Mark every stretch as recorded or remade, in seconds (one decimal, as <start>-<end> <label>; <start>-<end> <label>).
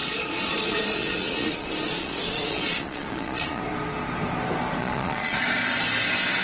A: 0.0-3.6 remade; 3.6-4.8 recorded; 4.8-5.4 remade; 5.4-6.4 recorded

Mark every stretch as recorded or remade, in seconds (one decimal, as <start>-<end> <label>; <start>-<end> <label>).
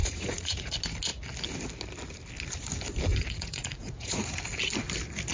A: 0.0-0.7 remade; 0.7-3.1 recorded; 3.1-4.4 remade; 4.4-5.3 recorded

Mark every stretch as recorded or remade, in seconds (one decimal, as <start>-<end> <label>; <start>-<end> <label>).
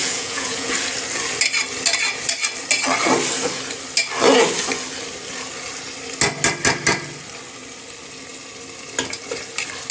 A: 0.0-0.7 remade; 0.7-9.9 recorded